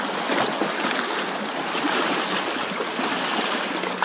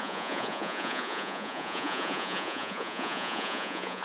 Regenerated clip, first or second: second